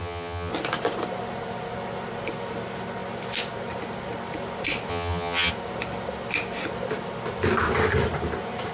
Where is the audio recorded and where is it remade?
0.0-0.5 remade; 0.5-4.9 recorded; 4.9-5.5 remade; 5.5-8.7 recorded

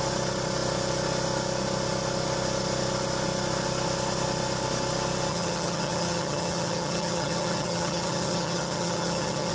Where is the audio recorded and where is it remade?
0.0-5.3 recorded; 5.3-9.5 remade

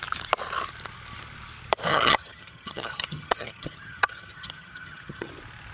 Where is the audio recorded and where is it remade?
0.0-1.9 recorded; 1.9-5.3 remade; 5.3-5.7 recorded

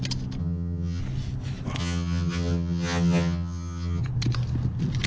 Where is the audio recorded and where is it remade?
0.0-0.4 recorded; 0.4-1.0 remade; 1.0-1.8 recorded; 1.8-4.0 remade; 4.0-5.1 recorded

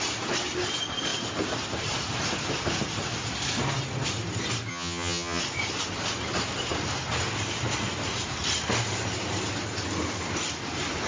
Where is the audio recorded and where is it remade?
0.0-4.7 recorded; 4.7-5.4 remade; 5.4-11.1 recorded

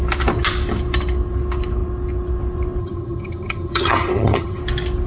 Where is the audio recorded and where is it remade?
0.0-2.8 recorded; 2.8-4.6 remade; 4.6-5.1 recorded

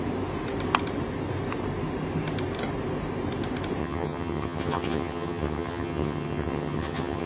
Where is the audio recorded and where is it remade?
0.0-3.8 recorded; 3.8-7.3 remade

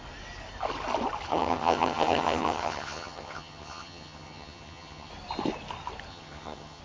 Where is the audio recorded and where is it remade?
0.0-1.3 recorded; 1.3-5.1 remade; 5.1-6.1 recorded; 6.1-6.8 remade